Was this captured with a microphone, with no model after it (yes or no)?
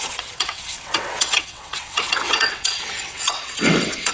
no